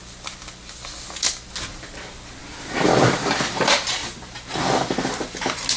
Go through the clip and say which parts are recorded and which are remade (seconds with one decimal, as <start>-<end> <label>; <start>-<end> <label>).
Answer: 0.0-2.4 recorded; 2.4-3.3 remade; 3.3-5.8 recorded